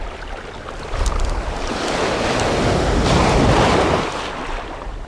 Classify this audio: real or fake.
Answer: real